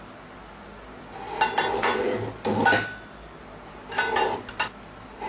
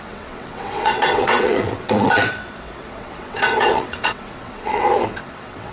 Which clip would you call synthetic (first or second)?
second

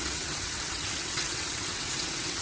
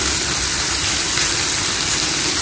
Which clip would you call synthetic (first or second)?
first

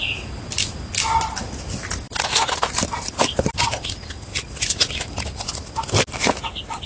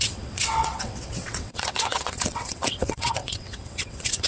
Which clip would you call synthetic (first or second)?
second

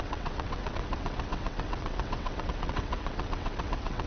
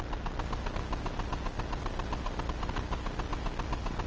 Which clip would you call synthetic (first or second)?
first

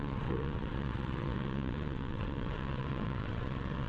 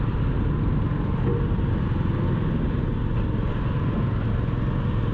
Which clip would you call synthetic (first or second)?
first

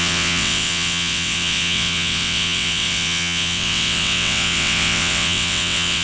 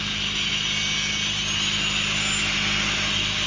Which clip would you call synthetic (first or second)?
first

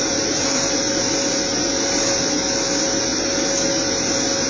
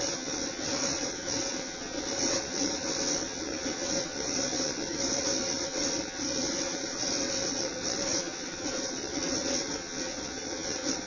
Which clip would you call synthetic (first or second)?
second